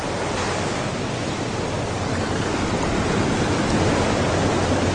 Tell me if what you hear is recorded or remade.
recorded